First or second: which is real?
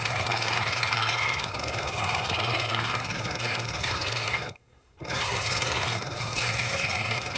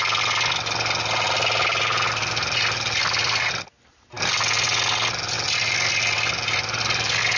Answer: second